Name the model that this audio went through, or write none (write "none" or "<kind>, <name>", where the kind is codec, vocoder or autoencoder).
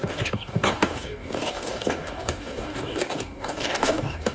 codec, DAC